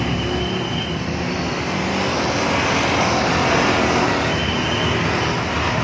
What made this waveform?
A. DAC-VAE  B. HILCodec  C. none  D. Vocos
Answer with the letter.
C